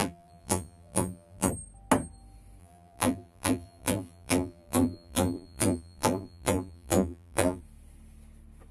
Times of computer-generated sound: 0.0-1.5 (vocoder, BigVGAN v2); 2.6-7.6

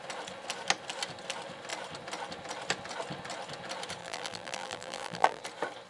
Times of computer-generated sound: 4.0-5.4 (vocoder, BigVGAN v2)